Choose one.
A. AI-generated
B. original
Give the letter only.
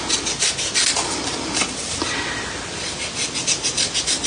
B